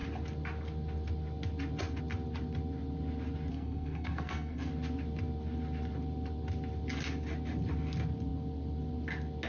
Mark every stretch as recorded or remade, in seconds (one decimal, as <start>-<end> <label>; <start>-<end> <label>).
0.0-3.5 recorded; 3.5-4.7 remade; 4.7-9.5 recorded